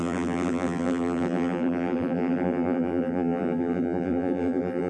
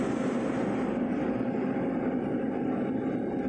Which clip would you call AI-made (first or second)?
first